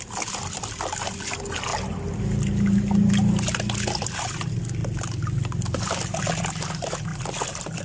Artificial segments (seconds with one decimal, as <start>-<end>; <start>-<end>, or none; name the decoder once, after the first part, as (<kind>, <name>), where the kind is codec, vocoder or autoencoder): none